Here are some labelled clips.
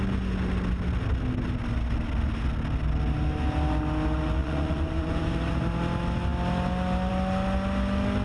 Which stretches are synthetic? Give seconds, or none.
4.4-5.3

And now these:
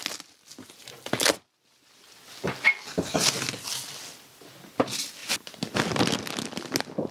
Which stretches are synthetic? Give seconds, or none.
none

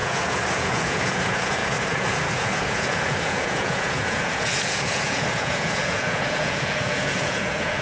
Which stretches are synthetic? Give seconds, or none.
0.0-7.8

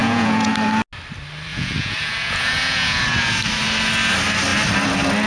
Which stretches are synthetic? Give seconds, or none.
0.0-0.5; 1.5-3.0

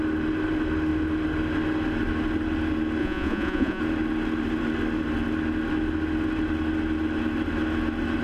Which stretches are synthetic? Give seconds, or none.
3.0-3.8

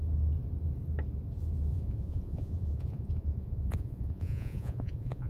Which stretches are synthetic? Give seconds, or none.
1.7-5.3

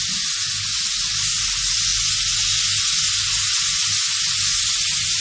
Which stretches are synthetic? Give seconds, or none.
none